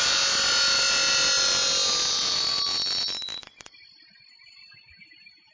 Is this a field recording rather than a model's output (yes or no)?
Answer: yes